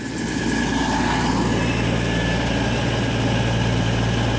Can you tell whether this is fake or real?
real